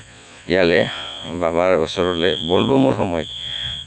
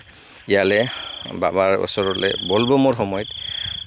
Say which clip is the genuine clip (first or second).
second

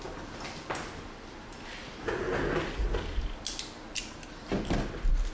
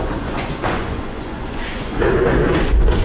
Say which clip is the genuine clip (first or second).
first